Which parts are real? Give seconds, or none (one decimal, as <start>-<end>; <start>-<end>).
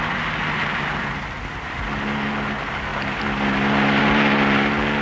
0.0-5.0